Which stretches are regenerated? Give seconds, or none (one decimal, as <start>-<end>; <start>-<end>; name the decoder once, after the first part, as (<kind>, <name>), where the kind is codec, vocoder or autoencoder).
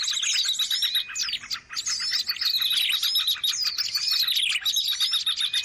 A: none